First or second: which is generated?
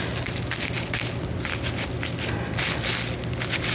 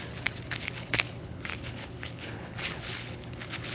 second